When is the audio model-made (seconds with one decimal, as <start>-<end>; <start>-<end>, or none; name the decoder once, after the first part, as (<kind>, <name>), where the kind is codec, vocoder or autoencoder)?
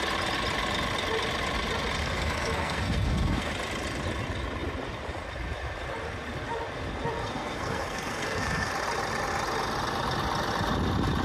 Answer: 2.0-3.5 (codec, SNAC); 7.2-8.7